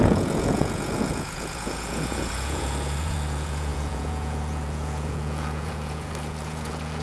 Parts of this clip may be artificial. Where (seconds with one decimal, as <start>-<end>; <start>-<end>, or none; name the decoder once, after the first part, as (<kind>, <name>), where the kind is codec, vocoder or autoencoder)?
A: 0.0-7.0 (vocoder, Vocos)